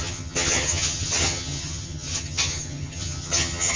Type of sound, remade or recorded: remade